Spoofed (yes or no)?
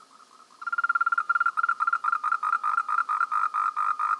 no